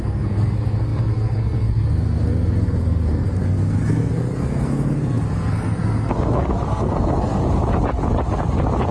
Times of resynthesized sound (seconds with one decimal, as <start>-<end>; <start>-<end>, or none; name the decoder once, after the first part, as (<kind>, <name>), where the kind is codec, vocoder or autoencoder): 0.0-7.4 (codec, SNAC)